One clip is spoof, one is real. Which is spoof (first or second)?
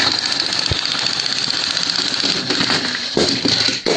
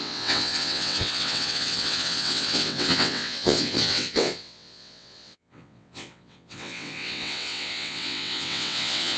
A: second